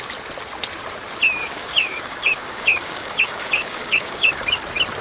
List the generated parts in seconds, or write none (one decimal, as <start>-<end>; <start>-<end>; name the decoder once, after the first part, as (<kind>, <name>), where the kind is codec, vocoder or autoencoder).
1.4-4.4 (codec, DAC)